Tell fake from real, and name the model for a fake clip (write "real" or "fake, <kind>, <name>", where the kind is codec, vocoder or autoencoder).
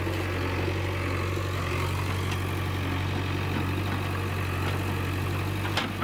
real